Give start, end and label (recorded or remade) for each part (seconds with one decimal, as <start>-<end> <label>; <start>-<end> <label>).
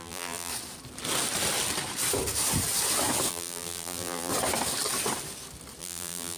0.0-0.5 remade; 0.5-3.3 recorded; 3.3-4.3 remade; 4.3-5.8 recorded; 5.8-6.4 remade